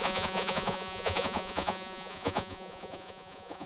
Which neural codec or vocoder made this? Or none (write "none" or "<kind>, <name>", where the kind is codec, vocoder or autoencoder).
vocoder, Vocos